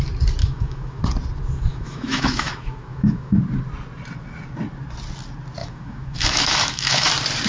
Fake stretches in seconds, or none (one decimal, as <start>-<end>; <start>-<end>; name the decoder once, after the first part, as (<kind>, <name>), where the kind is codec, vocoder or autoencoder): 0.4-1.0 (autoencoder, DAC-VAE); 1.7-3.4; 5.6-7.1